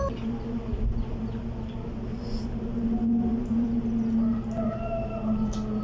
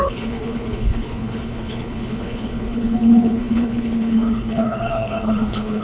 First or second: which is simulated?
second